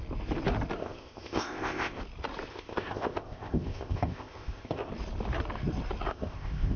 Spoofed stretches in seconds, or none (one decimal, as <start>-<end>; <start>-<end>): 0.8-2.0; 2.5-4.9; 6.1-6.8